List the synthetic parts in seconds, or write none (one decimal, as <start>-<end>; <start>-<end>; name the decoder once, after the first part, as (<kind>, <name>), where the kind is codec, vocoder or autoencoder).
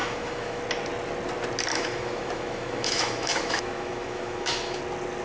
0.0-0.6 (autoencoder, DAC-VAE); 1.7-4.8